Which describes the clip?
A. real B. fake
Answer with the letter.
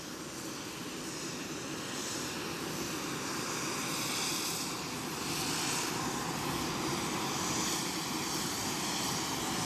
A